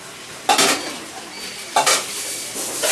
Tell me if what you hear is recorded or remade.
recorded